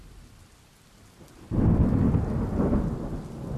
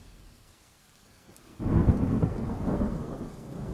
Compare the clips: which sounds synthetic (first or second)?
second